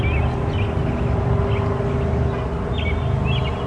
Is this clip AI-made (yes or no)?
no